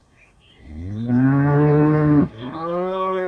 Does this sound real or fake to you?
fake